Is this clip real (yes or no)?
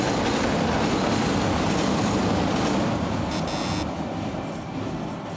yes